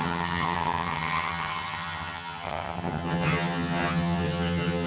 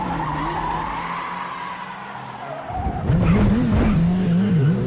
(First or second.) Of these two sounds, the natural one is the second